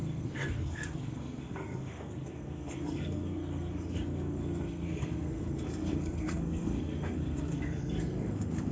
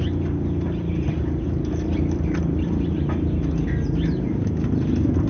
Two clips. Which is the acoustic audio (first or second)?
second